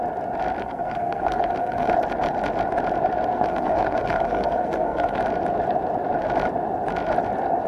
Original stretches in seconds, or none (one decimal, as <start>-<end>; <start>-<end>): 0.0-0.6; 1.9-3.3; 5.2-7.7